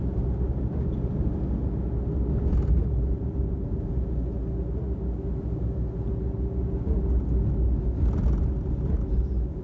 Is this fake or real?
real